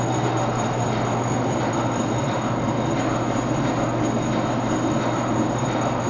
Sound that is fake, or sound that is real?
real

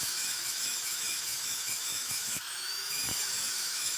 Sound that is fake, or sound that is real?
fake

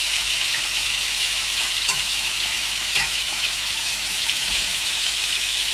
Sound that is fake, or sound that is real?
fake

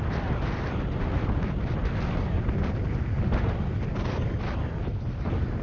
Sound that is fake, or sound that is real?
real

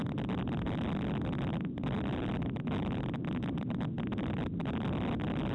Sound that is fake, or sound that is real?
real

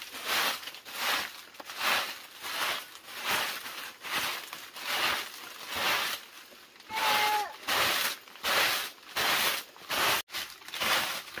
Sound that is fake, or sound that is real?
real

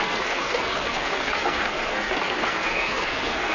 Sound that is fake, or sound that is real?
fake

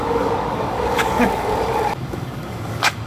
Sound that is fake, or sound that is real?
fake